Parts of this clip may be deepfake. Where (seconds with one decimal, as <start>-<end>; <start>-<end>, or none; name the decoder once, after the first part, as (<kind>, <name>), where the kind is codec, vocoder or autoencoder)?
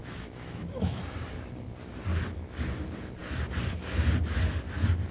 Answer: 0.0-1.0 (autoencoder, DAC-VAE)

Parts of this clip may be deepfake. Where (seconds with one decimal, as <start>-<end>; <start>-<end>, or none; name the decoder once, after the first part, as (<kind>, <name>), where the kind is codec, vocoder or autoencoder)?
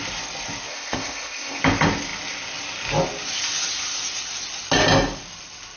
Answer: 0.7-1.6 (codec, ZipCodec)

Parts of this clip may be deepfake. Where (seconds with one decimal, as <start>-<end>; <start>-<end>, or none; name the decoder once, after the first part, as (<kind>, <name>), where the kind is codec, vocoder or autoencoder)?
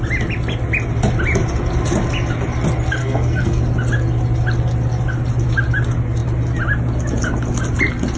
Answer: 3.0-3.6 (codec, SNAC)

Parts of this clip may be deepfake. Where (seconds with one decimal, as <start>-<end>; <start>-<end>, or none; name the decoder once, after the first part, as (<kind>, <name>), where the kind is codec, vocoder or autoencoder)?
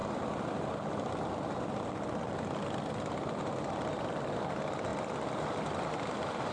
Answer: 2.9-6.5 (vocoder, BigVGAN v2)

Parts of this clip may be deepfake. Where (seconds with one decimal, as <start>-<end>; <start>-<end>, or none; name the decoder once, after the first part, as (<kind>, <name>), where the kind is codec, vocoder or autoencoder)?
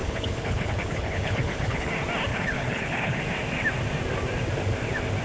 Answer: 0.0-1.9 (codec, HILCodec); 2.3-3.2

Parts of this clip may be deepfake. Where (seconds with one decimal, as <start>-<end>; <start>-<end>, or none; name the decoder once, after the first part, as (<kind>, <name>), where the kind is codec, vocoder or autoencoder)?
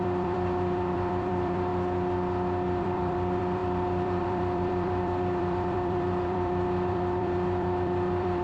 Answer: 0.0-1.7 (vocoder, BigVGAN v2); 2.8-8.4